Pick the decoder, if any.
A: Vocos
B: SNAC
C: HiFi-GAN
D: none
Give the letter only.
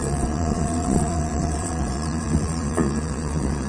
A